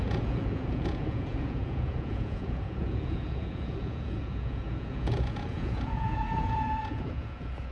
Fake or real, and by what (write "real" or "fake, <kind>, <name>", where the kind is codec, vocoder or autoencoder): fake, vocoder, Vocos